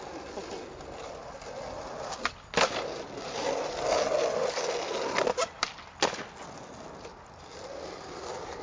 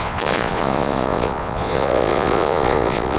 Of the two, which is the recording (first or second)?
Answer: first